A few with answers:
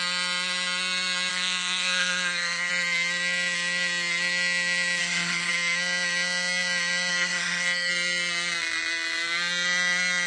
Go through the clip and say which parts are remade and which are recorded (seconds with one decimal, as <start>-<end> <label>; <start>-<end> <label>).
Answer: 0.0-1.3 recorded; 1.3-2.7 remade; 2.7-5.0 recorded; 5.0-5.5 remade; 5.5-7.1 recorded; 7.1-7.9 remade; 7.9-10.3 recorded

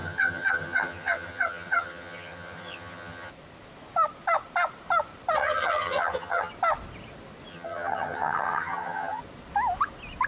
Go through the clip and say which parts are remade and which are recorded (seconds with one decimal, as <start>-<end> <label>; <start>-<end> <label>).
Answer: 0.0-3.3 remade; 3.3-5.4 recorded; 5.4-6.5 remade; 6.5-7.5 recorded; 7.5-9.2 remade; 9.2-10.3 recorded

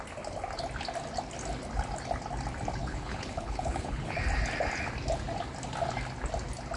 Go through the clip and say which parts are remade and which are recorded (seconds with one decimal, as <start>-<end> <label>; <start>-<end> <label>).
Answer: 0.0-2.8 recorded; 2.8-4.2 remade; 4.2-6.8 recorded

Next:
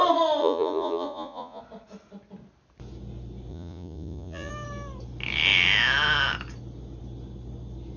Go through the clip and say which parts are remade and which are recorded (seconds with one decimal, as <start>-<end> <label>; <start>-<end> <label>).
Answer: 0.0-0.4 recorded; 0.4-1.6 remade; 1.6-3.5 recorded; 3.5-4.5 remade; 4.5-8.0 recorded

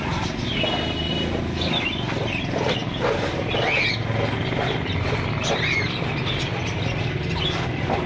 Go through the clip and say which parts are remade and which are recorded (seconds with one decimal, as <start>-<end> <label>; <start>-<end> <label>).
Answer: 0.0-8.1 recorded